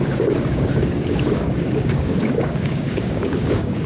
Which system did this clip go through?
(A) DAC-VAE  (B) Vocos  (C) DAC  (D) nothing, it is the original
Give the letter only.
C